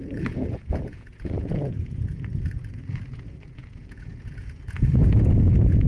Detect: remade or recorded remade